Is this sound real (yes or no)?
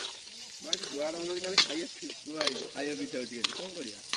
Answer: no